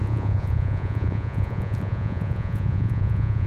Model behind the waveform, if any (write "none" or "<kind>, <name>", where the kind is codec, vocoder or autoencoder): vocoder, Vocos